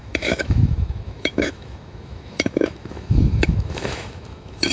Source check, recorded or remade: remade